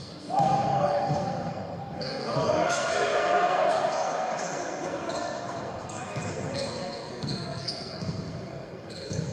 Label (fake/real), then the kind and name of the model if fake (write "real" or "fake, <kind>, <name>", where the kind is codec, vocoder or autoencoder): fake, codec, SNAC